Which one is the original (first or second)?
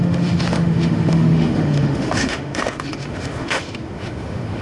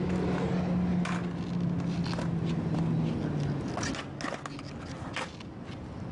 second